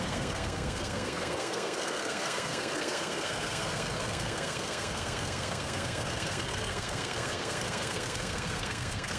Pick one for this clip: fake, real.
fake